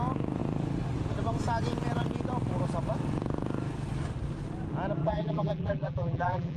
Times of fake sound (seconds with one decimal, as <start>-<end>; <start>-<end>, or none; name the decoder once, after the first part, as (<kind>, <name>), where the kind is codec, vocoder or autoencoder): 5.0-6.6 (vocoder, BigVGAN v2)